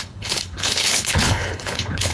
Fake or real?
fake